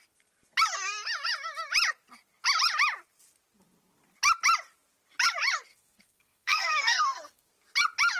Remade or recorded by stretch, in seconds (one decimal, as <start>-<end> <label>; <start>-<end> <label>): 0.0-5.7 recorded; 5.7-7.5 remade; 7.5-8.2 recorded